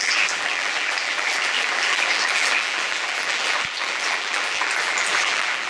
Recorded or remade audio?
remade